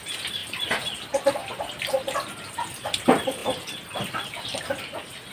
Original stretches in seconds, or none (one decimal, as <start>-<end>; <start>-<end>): 0.0-5.3